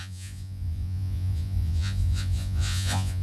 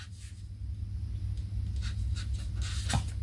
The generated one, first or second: first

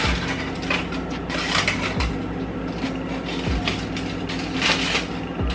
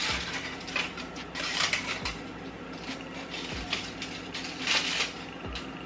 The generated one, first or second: second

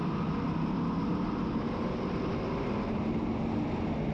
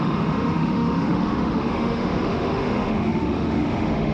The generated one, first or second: second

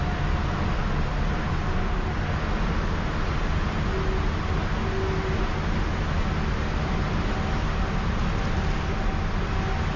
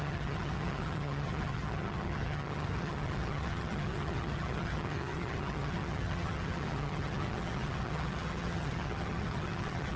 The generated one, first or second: second